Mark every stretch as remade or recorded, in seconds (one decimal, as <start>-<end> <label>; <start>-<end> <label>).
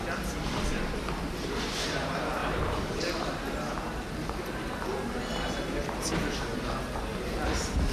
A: 0.0-2.4 recorded; 2.4-3.0 remade; 3.0-7.9 recorded